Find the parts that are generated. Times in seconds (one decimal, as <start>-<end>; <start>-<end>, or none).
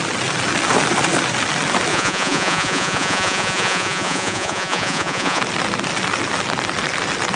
1.9-5.4